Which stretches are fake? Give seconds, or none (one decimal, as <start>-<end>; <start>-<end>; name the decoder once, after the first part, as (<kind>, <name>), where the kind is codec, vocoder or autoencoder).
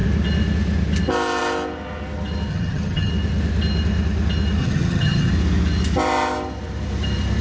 2.5-3.1 (vocoder, HiFi-GAN); 4.6-5.3